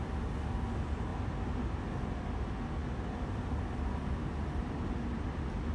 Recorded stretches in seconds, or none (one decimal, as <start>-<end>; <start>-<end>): 0.0-1.1; 1.8-5.7